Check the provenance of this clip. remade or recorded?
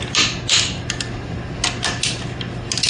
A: recorded